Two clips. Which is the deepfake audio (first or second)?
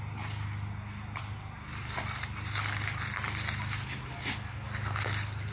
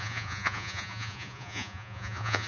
second